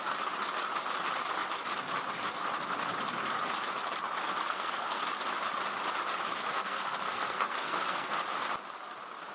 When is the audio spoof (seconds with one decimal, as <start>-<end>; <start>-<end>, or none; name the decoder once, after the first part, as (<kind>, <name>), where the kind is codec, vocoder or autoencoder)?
4.4-5.0 (codec, SNAC); 6.6-8.2